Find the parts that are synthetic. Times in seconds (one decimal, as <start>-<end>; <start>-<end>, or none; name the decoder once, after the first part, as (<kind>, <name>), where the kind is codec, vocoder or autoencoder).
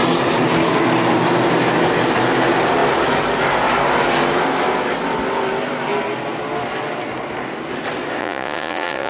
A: 8.2-9.1 (vocoder, Vocos)